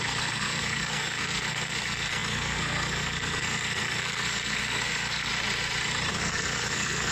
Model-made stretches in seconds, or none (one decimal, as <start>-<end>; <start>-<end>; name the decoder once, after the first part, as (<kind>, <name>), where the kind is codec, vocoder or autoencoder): 0.0-5.3 (codec, SNAC); 6.1-7.1